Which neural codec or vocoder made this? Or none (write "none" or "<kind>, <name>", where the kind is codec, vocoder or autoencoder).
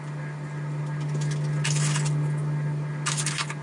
none